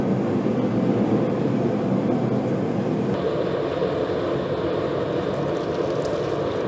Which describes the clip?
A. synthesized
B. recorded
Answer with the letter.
B